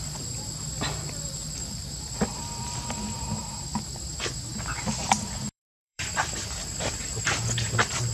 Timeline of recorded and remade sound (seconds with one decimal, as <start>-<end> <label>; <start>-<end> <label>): 0.0-4.5 remade; 4.5-5.0 recorded; 5.0-8.1 remade

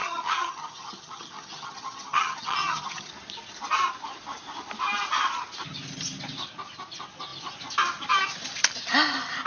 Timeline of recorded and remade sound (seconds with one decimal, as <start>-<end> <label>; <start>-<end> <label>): 0.0-3.1 remade; 3.1-9.5 recorded

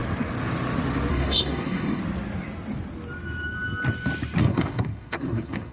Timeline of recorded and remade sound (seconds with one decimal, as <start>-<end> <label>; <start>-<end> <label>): 0.0-1.1 recorded; 1.1-2.0 remade; 2.0-4.4 recorded; 4.4-5.7 remade